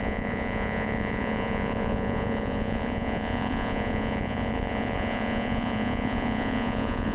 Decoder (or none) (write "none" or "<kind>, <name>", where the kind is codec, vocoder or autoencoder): vocoder, Vocos